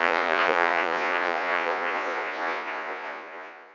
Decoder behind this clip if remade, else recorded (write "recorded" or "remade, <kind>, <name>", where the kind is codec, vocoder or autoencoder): remade, vocoder, Vocos